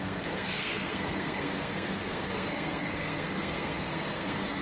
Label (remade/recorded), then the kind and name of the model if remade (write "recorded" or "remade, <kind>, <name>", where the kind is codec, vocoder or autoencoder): remade, codec, SNAC